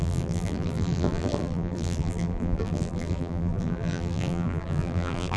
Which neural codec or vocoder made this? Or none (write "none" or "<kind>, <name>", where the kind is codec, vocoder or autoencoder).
vocoder, BigVGAN v2